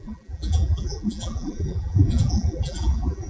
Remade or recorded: remade